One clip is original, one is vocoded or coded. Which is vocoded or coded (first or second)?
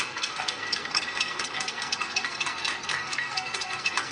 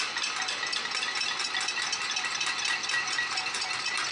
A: first